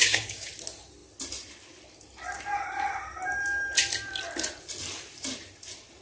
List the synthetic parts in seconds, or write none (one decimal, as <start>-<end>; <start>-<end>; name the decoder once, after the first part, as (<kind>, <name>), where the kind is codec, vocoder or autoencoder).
0.0-0.5 (codec, DAC)